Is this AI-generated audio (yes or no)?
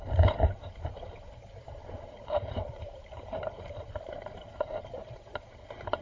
yes